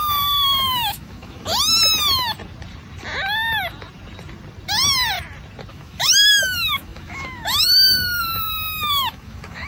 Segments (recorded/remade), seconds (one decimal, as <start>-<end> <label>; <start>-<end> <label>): 0.0-1.5 remade; 1.5-5.7 recorded; 5.7-9.7 remade